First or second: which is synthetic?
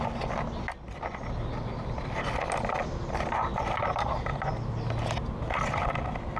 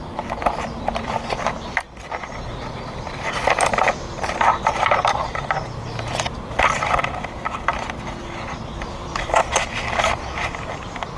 second